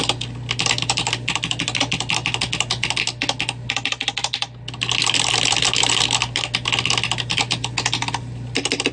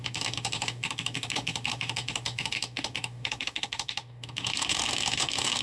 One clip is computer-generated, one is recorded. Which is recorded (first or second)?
first